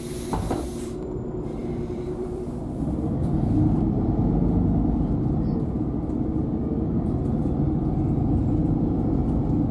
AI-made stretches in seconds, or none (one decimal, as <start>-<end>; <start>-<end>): 1.6-3.4; 8.6-9.1